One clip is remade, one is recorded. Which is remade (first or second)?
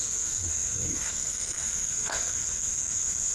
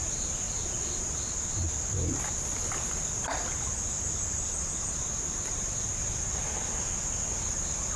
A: first